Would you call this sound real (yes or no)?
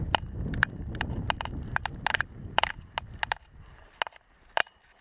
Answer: yes